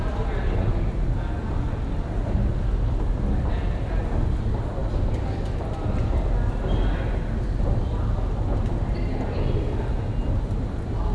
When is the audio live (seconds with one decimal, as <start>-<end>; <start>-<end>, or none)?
0.0-11.1